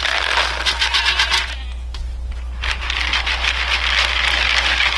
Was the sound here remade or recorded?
recorded